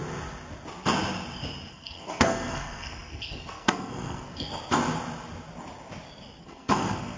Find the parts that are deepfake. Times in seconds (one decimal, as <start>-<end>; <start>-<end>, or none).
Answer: 1.7-4.5; 6.4-7.2